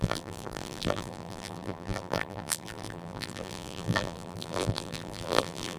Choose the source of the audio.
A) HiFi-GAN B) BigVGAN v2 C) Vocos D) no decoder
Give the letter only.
B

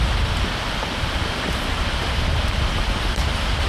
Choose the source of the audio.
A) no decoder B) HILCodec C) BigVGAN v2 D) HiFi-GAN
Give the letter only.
C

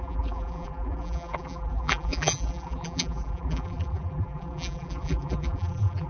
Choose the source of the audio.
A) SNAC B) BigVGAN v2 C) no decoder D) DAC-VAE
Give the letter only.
B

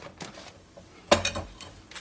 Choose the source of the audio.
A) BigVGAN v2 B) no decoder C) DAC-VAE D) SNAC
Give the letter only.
B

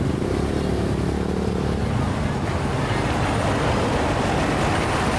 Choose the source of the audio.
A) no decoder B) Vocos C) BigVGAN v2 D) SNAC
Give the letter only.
A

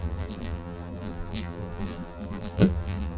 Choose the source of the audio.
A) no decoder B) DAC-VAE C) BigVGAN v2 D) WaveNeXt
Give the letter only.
C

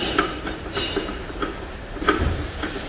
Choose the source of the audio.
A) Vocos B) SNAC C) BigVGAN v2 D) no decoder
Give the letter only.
C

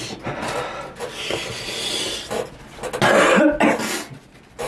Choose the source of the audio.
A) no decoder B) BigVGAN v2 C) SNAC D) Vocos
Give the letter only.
A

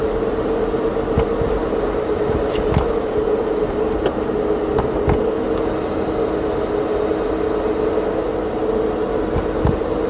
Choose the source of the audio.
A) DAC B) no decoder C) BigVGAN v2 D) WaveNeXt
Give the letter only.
B